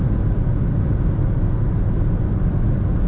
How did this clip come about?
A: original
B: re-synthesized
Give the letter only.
A